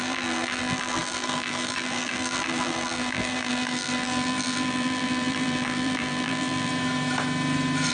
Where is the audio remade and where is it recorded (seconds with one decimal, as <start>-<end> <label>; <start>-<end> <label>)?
0.0-6.7 remade; 6.7-7.9 recorded